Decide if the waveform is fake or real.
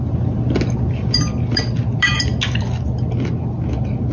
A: real